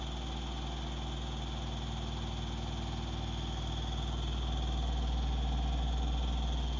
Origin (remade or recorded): recorded